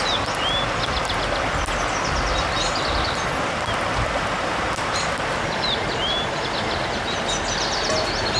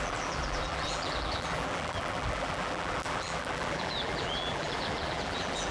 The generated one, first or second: second